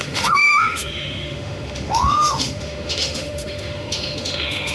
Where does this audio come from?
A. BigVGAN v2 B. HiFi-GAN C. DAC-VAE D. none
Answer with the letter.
C